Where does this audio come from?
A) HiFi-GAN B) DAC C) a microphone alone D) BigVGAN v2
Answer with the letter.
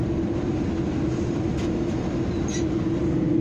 C